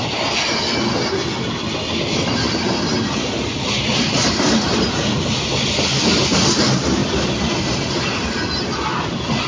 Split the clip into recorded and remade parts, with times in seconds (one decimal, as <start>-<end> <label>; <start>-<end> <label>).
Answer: 0.0-9.5 recorded

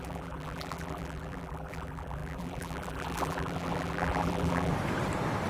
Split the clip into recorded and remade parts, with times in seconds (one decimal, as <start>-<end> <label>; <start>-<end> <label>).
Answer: 0.0-4.7 remade; 4.7-5.5 recorded